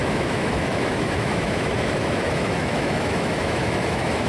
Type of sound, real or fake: fake